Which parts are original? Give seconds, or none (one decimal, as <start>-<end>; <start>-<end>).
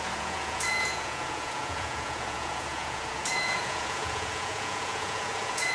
none